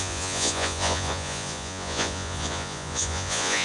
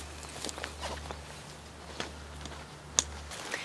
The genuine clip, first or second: second